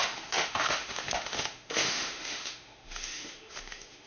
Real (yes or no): no